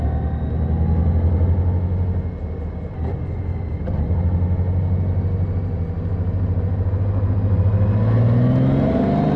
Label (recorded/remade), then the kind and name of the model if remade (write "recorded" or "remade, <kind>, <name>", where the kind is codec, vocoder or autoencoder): recorded